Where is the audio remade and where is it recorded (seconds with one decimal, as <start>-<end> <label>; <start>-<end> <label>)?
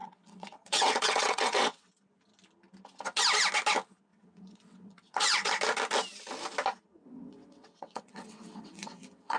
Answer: 0.0-1.9 remade; 1.9-4.1 recorded; 4.1-5.5 remade; 5.5-7.0 recorded; 7.0-9.4 remade